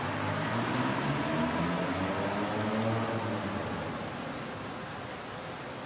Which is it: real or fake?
real